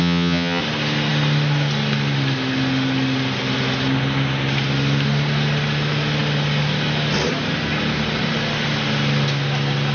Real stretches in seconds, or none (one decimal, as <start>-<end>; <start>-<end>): 0.6-9.9